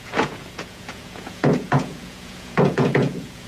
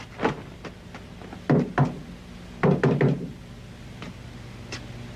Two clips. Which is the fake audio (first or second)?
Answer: first